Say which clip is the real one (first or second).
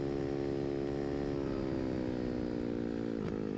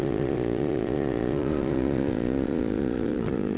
first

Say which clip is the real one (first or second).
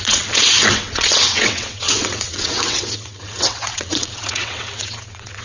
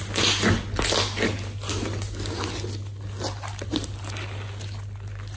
second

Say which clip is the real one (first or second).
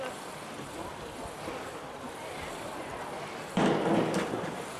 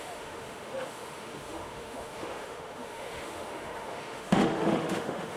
first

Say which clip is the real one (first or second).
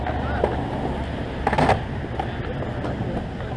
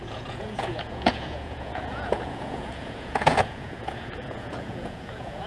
first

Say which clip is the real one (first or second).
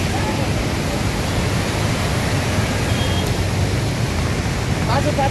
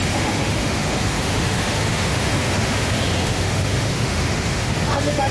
first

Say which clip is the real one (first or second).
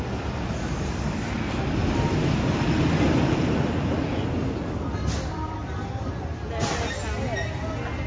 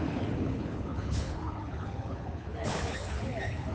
first